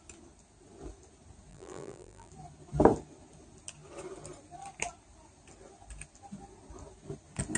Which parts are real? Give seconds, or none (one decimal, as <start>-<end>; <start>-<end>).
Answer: 0.0-1.5; 2.3-7.6